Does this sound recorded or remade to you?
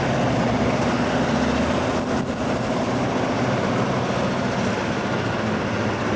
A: recorded